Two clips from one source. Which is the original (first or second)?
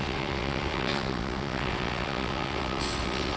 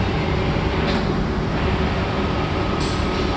second